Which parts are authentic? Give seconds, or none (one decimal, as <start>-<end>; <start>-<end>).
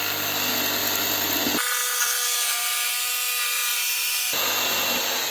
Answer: 0.0-3.7; 4.5-5.3